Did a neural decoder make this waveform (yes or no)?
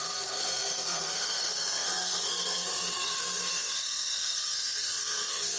yes